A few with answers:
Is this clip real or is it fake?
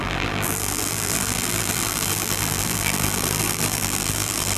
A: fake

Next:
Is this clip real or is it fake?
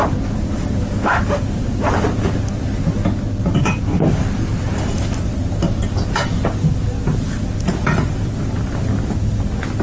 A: real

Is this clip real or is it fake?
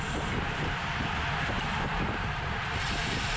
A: fake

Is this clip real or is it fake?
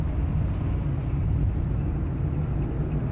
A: real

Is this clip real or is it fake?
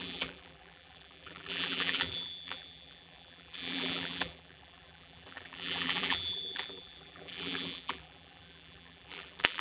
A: fake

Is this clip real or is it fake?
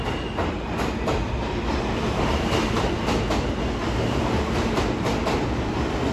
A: real